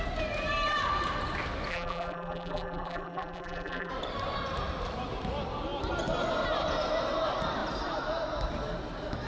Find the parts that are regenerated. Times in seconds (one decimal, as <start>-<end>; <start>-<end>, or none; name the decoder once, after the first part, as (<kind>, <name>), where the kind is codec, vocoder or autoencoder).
1.7-3.9 (vocoder, BigVGAN v2)